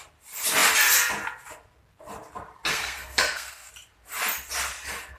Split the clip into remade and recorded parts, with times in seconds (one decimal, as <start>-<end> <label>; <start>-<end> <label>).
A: 0.0-2.7 recorded; 2.7-3.7 remade; 3.7-5.2 recorded